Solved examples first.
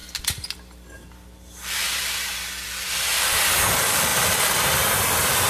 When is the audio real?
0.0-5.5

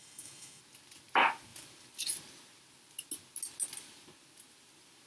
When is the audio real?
0.6-5.1

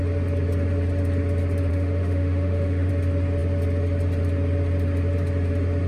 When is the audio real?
0.0-1.7; 2.9-5.9